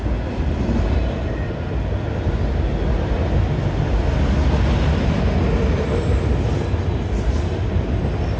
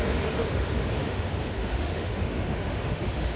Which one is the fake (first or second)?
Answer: second